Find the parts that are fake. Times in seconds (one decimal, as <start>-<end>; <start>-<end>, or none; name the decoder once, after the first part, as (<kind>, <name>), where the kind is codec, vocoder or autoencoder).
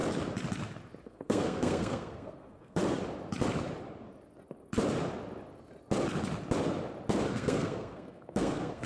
1.0-2.8 (codec, SNAC); 7.3-8.9